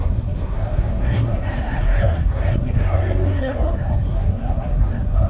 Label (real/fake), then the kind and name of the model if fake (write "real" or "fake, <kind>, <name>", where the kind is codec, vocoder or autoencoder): fake, codec, SNAC